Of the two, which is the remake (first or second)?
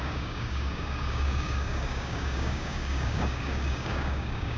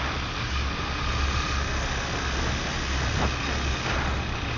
first